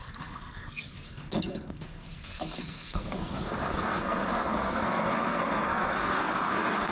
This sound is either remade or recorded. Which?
remade